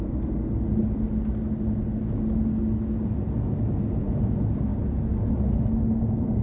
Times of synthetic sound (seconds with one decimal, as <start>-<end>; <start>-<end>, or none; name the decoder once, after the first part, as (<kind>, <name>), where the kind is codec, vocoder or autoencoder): none